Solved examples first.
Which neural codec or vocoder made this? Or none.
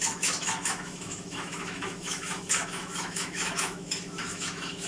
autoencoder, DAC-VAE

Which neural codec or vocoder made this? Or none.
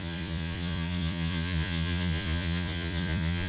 vocoder, Vocos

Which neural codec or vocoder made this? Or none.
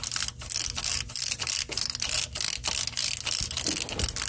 none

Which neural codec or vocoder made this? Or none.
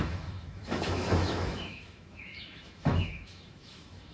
autoencoder, DAC-VAE